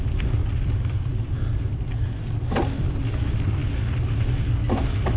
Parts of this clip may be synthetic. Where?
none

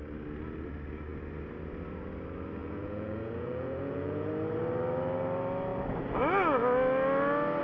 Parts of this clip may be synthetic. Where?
2.6-4.3

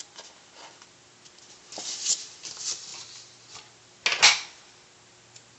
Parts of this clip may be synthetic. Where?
none

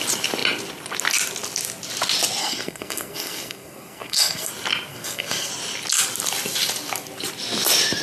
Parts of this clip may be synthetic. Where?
2.4-4.5; 4.9-5.5